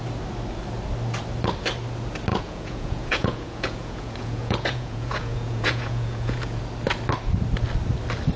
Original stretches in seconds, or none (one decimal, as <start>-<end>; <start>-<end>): 0.0-2.3; 6.6-8.4